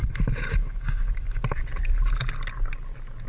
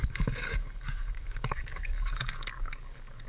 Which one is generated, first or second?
second